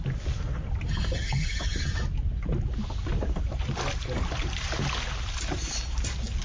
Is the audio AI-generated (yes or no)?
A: no